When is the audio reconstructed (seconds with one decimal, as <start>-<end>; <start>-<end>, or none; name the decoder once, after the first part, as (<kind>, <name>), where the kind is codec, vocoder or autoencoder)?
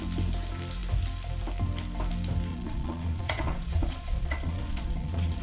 2.5-5.4 (vocoder, Vocos)